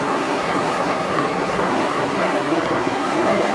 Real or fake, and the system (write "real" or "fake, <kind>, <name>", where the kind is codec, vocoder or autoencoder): fake, codec, SNAC